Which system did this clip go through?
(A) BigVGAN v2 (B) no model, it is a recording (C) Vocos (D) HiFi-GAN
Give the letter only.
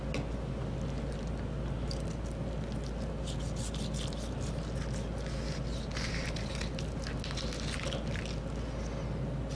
B